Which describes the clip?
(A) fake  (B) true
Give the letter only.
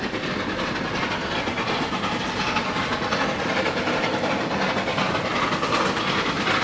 B